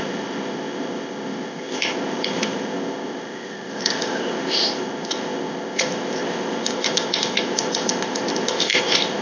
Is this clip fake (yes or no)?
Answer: yes